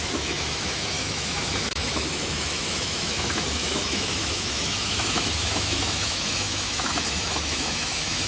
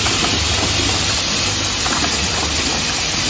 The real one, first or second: second